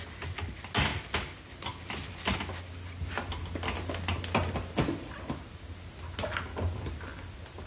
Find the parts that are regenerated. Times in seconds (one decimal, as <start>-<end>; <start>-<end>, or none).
none